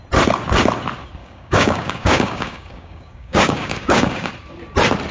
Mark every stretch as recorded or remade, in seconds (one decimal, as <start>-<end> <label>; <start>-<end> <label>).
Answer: 0.0-1.2 recorded; 1.2-4.3 remade; 4.3-5.1 recorded